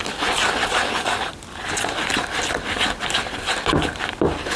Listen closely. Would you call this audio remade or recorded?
recorded